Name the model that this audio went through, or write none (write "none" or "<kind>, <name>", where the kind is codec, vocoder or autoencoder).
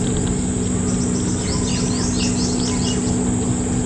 none